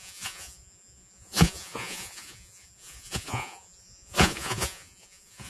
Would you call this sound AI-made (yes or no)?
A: yes